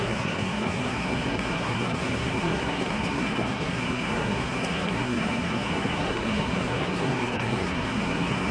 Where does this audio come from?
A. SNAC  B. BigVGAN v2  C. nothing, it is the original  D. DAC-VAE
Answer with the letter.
A